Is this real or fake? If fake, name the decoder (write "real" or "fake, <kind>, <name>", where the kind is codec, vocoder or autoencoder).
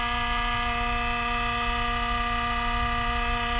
real